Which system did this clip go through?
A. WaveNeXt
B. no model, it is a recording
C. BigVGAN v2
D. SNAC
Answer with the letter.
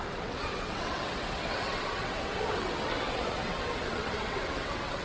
A